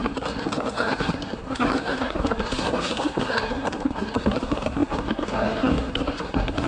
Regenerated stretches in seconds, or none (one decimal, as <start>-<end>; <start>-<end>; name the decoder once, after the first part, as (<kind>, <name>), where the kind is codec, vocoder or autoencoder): 0.0-6.7 (codec, SNAC)